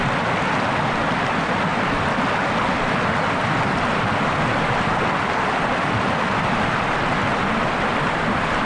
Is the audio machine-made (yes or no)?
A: no